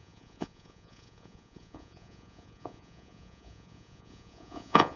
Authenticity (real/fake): fake